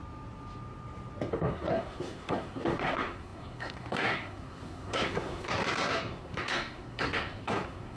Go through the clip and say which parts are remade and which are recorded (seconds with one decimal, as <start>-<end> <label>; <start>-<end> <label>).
0.0-1.3 recorded; 1.3-8.0 remade